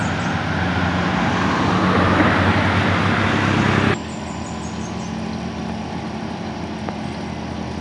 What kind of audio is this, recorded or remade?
recorded